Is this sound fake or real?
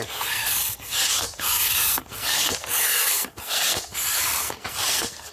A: fake